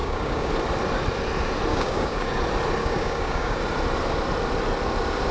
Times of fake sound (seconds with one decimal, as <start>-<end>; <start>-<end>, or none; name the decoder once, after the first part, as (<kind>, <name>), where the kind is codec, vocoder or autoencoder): 0.0-0.5 (codec, DAC); 1.7-2.4; 2.8-3.6